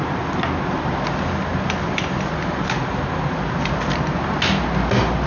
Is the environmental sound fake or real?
real